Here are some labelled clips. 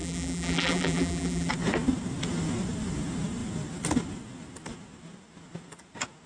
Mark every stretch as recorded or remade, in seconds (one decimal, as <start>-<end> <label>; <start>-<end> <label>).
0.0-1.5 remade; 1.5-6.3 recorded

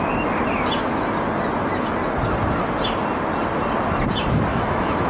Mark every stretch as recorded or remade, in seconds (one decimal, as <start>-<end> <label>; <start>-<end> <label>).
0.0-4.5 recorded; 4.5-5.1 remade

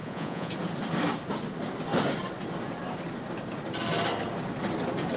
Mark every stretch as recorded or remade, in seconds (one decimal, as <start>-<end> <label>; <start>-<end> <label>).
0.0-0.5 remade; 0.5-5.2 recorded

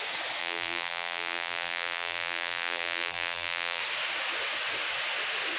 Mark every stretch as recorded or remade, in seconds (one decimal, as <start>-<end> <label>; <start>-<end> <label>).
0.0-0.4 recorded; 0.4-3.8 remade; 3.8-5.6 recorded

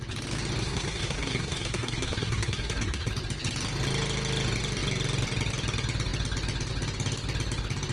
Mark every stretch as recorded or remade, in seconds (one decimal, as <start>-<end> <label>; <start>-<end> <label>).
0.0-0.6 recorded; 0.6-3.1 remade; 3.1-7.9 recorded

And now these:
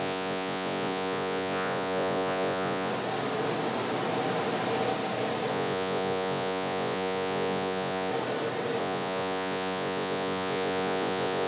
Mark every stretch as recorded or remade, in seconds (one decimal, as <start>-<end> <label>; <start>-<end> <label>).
0.0-2.9 remade; 2.9-5.5 recorded; 5.5-8.1 remade; 8.1-8.8 recorded; 8.8-11.5 remade